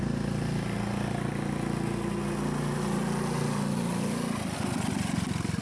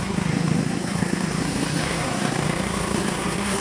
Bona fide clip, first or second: first